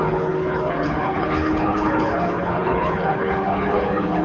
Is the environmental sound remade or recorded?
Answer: remade